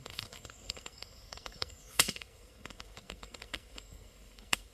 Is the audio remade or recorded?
remade